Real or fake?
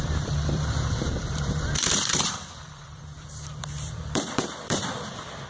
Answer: fake